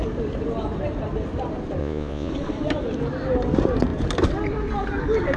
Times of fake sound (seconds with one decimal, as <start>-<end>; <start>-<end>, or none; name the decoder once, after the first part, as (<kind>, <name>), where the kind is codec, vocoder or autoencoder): 1.8-2.3 (vocoder, Vocos)